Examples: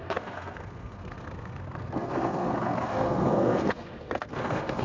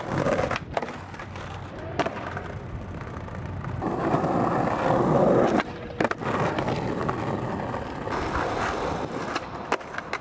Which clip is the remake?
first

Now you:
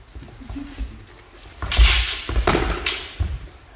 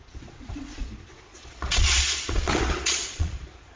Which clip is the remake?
second